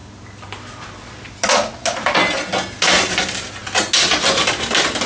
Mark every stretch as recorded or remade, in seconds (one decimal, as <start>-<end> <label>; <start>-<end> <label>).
0.0-5.1 recorded